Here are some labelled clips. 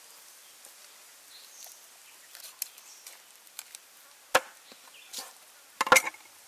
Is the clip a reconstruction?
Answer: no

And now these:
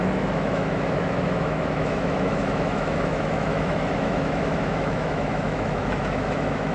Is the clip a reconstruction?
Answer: yes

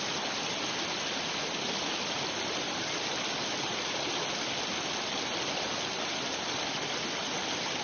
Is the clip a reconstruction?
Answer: no